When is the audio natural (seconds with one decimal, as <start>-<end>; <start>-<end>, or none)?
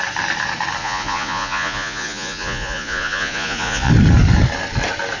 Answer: 0.0-0.8; 3.9-5.2